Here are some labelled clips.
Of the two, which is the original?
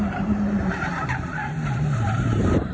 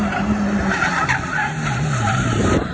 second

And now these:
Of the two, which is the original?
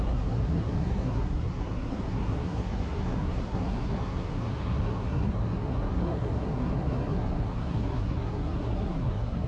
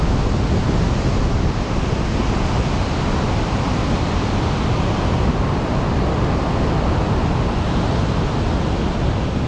second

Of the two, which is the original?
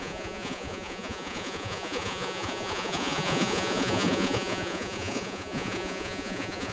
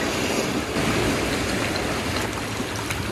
second